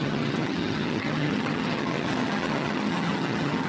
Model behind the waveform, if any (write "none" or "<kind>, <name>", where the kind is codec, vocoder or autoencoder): vocoder, HiFi-GAN